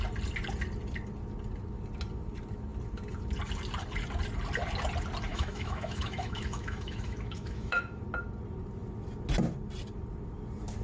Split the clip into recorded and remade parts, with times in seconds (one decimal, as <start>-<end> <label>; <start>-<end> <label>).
0.0-5.3 recorded; 5.3-7.8 remade; 7.8-10.8 recorded